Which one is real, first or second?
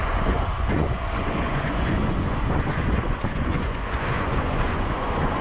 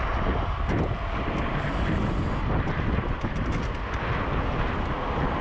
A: second